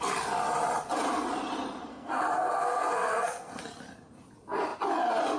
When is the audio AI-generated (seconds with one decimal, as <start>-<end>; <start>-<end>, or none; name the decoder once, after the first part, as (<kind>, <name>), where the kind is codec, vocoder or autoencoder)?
1.9-3.6 (codec, SNAC)